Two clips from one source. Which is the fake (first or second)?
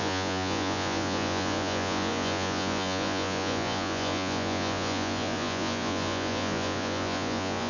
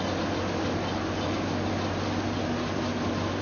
first